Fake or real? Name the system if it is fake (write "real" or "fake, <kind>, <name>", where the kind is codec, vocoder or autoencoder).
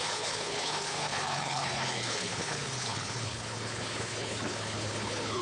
fake, codec, HILCodec